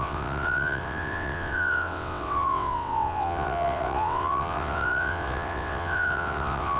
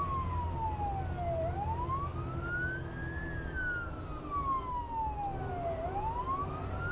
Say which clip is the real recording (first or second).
second